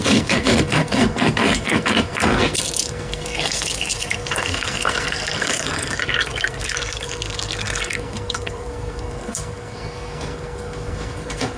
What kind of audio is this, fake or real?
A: fake